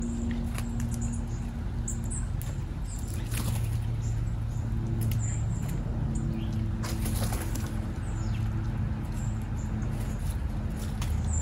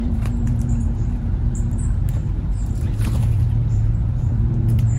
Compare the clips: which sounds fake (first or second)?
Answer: second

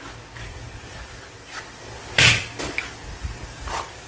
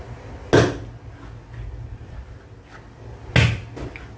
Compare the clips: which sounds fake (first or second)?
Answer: first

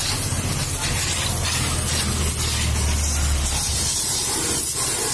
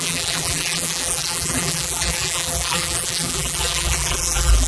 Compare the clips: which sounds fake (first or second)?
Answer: second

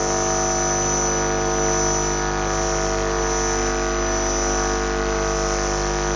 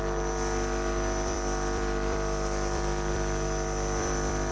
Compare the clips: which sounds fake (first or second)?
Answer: second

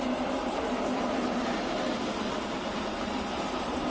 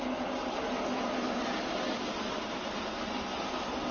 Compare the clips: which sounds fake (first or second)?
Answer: first